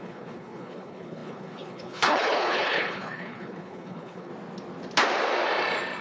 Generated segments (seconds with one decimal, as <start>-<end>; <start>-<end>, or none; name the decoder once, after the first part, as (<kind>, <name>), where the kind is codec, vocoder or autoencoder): 0.0-4.3 (codec, HILCodec)